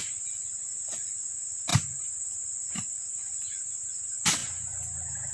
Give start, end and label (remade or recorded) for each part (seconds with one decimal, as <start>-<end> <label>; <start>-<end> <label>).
0.0-5.3 recorded